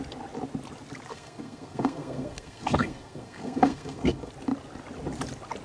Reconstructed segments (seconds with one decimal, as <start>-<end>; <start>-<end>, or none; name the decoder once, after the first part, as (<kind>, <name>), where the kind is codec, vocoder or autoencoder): 1.1-4.3 (codec, SNAC)